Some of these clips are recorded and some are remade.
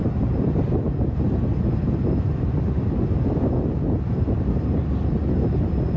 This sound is recorded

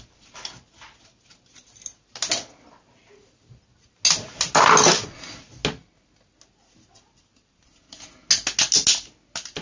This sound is recorded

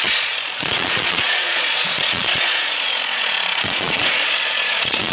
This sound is remade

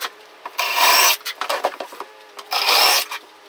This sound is recorded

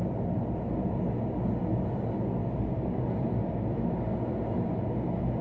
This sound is recorded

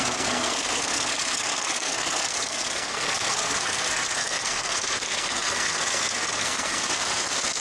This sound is remade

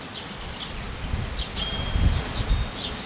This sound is recorded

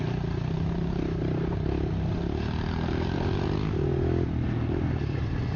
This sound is recorded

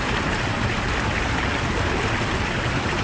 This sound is recorded